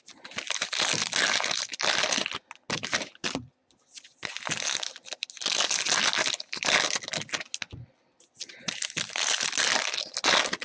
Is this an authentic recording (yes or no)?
yes